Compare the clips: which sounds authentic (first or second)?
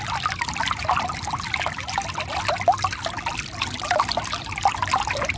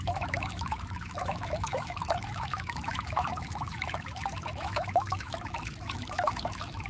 first